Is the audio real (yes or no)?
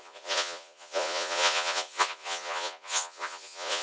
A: no